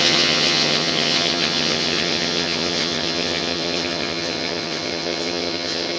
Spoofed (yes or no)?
yes